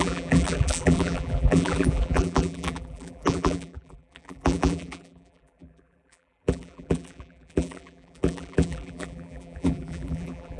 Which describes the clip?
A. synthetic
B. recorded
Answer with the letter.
A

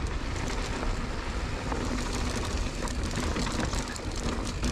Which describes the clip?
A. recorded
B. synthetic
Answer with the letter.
A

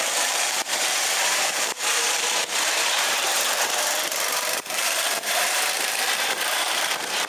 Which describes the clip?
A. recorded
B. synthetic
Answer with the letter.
B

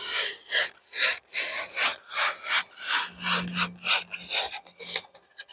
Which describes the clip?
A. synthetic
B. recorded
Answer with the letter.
B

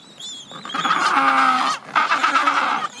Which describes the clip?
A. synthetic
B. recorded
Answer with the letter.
B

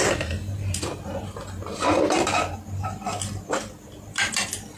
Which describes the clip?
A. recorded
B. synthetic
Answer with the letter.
A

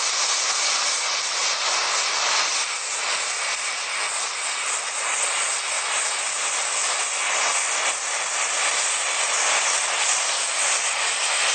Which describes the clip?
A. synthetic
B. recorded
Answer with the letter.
B